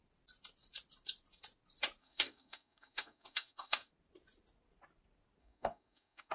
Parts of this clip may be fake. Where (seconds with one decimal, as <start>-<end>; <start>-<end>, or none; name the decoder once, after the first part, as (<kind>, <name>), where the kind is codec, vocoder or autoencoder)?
2.0-3.9 (codec, DAC); 5.4-6.3